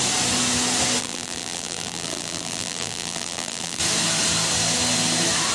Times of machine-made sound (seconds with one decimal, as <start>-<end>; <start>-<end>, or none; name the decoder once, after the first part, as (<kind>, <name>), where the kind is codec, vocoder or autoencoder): 1.0-3.8 (vocoder, BigVGAN v2)

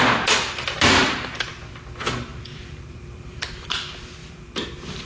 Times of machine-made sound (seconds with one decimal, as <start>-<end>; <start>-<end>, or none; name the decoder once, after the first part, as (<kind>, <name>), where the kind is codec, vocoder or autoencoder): 1.0-1.5 (vocoder, BigVGAN v2); 2.3-3.5; 4.2-5.1

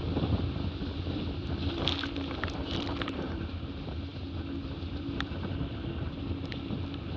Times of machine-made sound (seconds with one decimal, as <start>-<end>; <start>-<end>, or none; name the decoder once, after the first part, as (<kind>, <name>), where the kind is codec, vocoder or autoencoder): 2.6-3.4 (vocoder, BigVGAN v2)